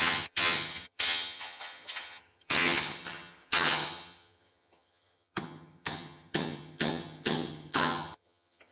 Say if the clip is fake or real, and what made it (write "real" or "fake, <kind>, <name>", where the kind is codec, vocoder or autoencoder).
fake, vocoder, HiFi-GAN